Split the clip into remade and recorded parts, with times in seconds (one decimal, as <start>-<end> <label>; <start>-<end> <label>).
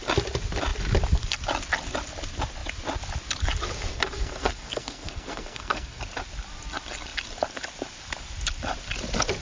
0.0-3.9 recorded; 3.9-6.0 remade; 6.0-9.4 recorded